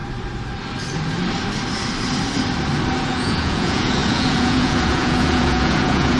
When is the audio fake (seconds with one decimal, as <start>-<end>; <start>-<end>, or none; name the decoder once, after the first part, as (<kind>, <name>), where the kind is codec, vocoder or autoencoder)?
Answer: 3.0-6.2 (vocoder, Vocos)